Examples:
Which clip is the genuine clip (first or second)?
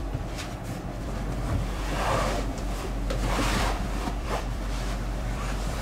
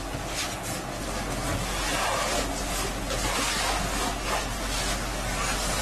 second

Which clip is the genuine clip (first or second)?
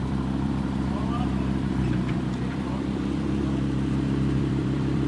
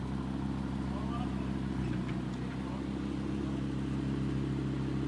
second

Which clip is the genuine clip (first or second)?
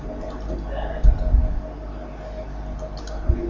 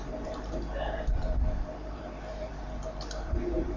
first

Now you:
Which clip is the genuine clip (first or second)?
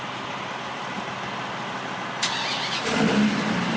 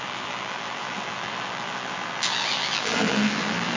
first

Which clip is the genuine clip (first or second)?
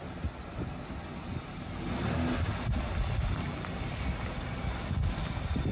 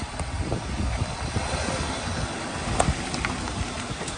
first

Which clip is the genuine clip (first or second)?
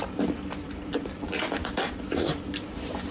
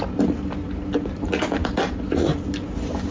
second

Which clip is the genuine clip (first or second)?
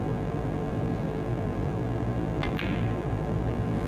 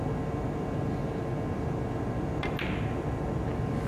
second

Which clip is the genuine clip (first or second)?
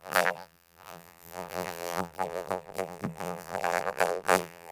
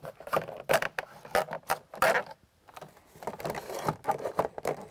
second